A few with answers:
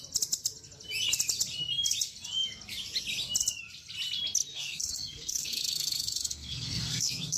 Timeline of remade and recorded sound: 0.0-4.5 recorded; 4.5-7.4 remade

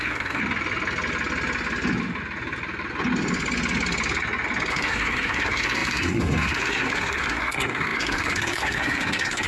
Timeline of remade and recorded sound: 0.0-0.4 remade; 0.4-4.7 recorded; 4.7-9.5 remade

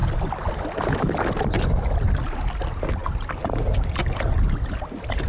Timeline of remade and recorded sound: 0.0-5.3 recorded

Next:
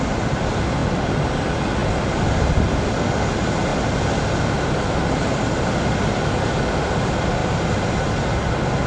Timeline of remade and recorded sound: 0.0-8.9 recorded